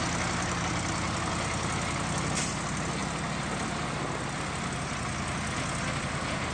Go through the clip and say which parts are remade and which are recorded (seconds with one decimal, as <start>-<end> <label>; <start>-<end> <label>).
0.0-6.5 recorded